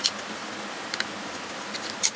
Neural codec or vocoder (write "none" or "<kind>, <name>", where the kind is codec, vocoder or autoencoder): none